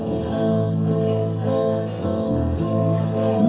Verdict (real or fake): fake